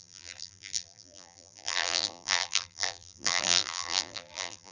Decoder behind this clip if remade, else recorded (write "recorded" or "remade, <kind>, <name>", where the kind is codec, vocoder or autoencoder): remade, vocoder, BigVGAN v2